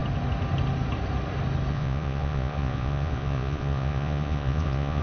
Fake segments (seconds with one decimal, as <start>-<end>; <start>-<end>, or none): 1.7-5.0